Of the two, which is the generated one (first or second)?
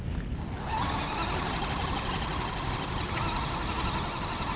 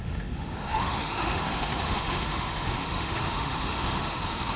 second